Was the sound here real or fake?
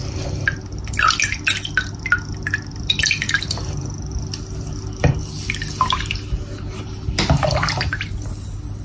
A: real